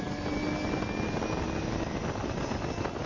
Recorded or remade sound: recorded